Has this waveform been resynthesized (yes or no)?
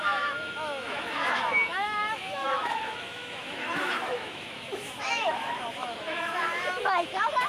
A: yes